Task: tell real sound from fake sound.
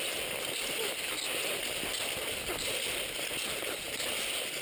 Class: real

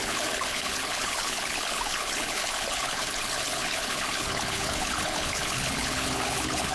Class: fake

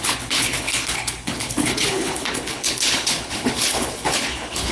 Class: fake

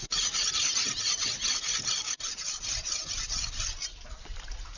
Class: real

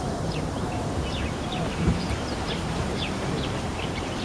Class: fake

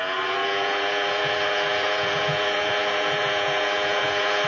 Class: fake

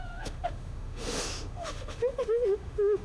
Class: fake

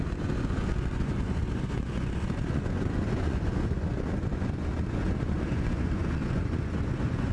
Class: fake